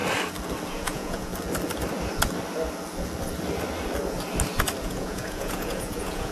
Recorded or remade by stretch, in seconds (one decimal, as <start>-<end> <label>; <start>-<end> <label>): 0.0-0.7 recorded; 0.7-1.3 remade; 1.3-4.8 recorded; 4.8-6.3 remade